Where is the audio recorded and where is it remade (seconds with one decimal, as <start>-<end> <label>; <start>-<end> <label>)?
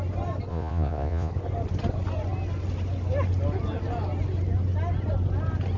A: 0.0-0.5 recorded; 0.5-1.3 remade; 1.3-5.8 recorded